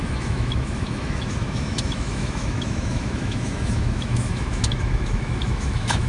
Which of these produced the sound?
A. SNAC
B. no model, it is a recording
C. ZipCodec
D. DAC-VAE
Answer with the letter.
D